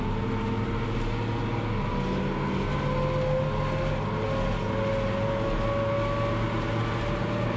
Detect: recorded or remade recorded